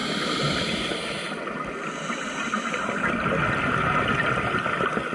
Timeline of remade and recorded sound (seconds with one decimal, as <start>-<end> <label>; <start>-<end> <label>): 0.0-5.1 recorded